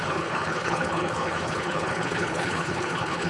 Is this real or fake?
fake